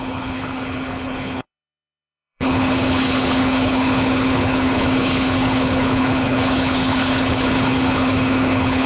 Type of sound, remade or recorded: remade